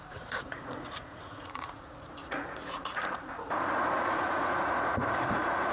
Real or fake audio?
fake